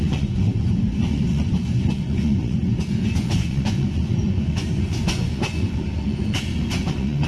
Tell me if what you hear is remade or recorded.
remade